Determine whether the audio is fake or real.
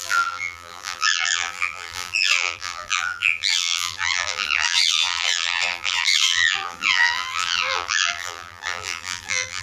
fake